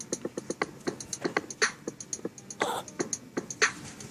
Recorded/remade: recorded